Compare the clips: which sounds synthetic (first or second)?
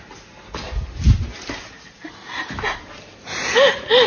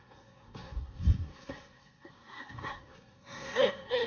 second